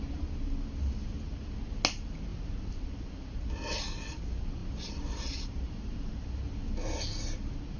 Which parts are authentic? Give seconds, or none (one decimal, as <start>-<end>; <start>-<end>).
0.0-2.3; 3.0-4.6; 6.3-7.8